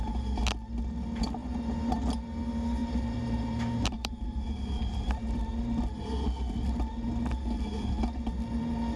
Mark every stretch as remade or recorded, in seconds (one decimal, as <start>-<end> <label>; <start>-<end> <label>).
0.0-2.8 recorded; 2.8-5.5 remade; 5.5-9.0 recorded